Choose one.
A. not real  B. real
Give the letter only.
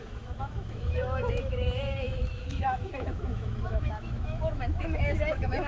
A